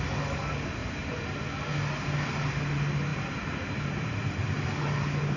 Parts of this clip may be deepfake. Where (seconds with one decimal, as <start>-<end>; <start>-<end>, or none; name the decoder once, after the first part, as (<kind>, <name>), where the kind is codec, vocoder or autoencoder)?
3.1-4.7 (vocoder, BigVGAN v2)